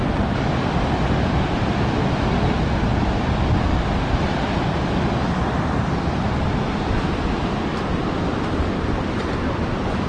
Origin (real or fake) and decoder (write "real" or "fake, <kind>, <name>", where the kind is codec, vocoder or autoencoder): real